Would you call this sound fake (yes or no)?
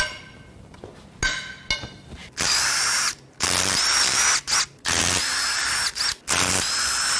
no